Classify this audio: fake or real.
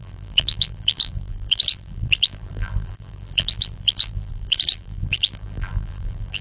fake